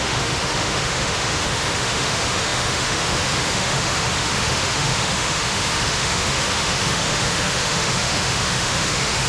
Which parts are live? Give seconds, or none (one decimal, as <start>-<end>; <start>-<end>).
none